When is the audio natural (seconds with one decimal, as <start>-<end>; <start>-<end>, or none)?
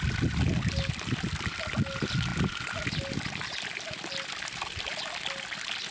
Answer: 0.0-5.9